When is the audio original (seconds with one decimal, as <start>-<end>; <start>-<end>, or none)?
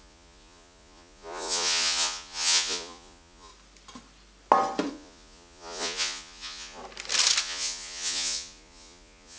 3.5-4.9; 6.8-7.4